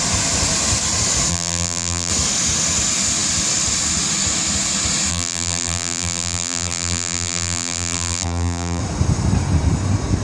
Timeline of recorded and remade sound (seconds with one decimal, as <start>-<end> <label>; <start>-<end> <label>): 0.0-1.3 recorded; 1.3-2.1 remade; 2.1-5.1 recorded; 5.1-8.8 remade; 8.8-10.2 recorded